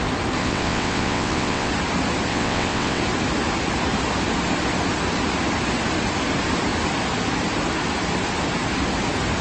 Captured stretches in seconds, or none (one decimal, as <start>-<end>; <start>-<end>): 0.0-0.4; 1.7-2.3; 3.0-9.4